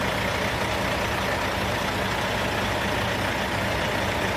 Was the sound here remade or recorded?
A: recorded